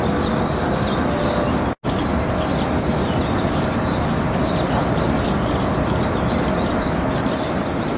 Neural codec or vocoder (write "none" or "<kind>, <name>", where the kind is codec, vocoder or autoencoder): none